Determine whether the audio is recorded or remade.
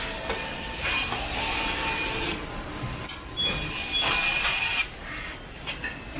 recorded